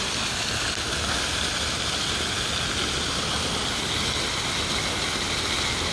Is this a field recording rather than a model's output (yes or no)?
yes